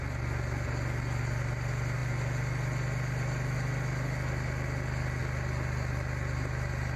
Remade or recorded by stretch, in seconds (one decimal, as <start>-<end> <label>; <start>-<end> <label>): 0.0-7.0 recorded